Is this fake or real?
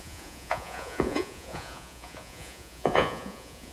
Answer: fake